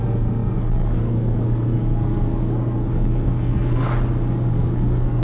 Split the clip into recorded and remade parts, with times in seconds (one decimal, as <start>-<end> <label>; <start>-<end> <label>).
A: 0.0-3.9 remade; 3.9-4.5 recorded; 4.5-5.2 remade